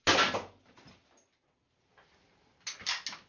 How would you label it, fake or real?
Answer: real